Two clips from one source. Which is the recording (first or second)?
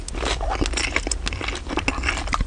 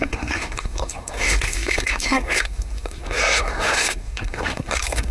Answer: first